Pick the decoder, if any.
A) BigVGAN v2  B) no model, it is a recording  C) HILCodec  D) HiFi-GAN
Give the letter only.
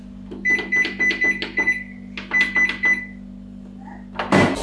B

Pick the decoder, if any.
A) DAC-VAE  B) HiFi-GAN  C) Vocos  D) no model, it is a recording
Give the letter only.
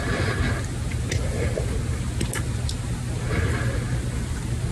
D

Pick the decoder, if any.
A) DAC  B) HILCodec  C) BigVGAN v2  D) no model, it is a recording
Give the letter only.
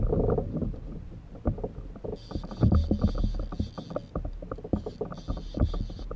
D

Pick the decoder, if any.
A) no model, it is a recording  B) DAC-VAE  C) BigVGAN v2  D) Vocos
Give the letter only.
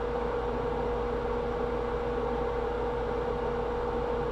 A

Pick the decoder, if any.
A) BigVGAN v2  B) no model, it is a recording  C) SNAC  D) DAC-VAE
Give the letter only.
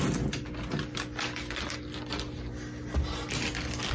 B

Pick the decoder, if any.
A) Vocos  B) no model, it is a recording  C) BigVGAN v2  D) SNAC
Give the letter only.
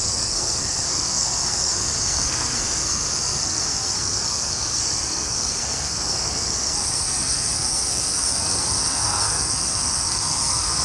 D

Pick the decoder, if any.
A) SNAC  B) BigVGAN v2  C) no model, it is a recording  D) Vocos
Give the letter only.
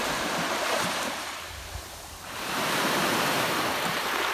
B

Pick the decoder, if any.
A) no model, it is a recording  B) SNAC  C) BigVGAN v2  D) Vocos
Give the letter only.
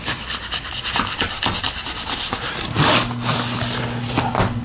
A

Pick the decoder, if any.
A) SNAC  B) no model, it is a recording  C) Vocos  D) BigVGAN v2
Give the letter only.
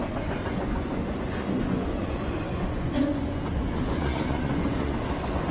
C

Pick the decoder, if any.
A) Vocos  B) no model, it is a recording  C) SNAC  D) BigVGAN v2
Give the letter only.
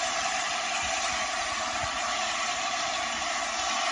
D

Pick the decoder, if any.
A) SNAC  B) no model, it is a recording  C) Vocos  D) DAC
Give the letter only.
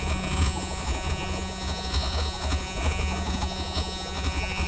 C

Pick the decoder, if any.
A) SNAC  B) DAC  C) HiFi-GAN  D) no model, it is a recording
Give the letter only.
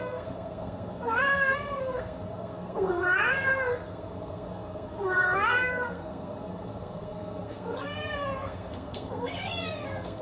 A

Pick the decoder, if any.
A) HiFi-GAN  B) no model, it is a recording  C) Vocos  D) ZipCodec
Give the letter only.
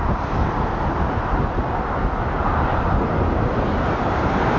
B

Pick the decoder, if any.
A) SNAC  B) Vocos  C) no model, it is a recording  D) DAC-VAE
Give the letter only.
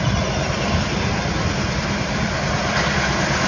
C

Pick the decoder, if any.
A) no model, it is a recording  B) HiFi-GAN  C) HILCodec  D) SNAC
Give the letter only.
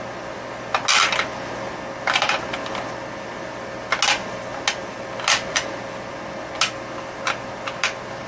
A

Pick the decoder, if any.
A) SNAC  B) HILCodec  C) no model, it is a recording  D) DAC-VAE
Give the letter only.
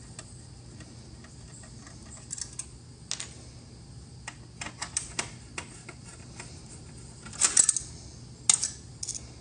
C